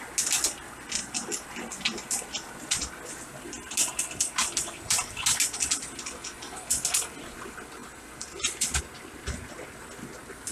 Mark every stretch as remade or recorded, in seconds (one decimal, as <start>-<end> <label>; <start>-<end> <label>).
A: 0.0-7.8 recorded; 7.8-8.8 remade; 8.8-10.5 recorded